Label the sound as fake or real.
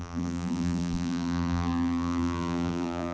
fake